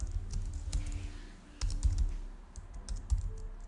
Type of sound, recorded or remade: recorded